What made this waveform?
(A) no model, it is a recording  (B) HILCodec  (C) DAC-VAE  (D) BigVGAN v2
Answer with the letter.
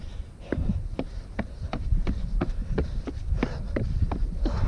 D